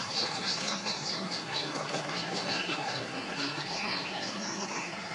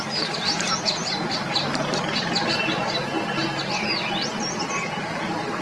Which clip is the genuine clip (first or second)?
second